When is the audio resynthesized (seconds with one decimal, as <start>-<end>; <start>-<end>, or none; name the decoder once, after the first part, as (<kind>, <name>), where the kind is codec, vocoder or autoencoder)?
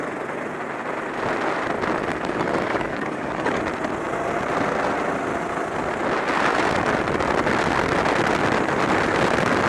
2.1-3.6 (codec, DAC)